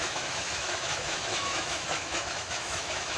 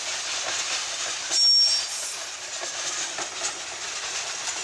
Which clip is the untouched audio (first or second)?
second